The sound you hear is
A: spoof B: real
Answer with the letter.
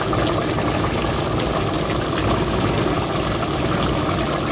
B